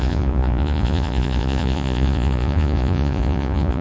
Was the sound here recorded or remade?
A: remade